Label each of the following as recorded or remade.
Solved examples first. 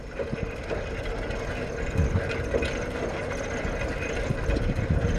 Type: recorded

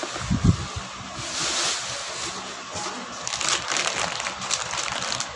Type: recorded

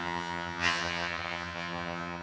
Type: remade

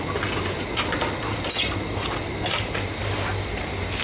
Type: recorded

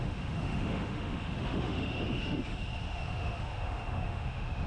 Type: remade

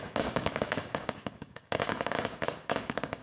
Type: remade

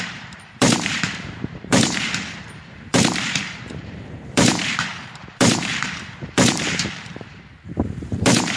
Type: remade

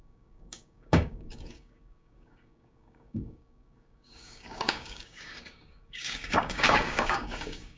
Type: remade